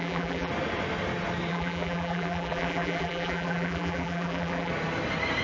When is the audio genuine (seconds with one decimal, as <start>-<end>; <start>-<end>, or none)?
0.5-1.5; 4.7-5.4